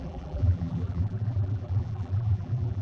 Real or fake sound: fake